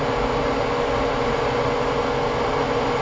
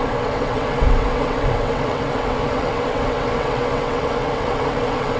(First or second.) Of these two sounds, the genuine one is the first